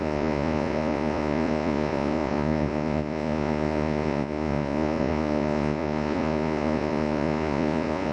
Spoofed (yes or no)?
yes